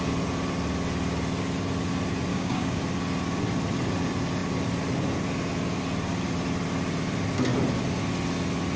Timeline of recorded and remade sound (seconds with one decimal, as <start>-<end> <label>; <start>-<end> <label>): 0.0-2.3 recorded; 2.3-2.8 remade; 2.8-8.8 recorded